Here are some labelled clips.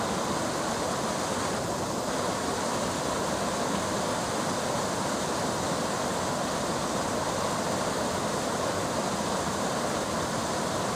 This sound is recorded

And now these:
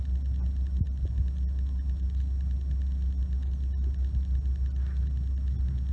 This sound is recorded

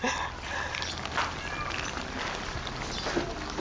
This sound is recorded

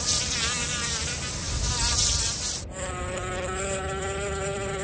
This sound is recorded